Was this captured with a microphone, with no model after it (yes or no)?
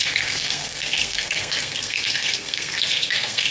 no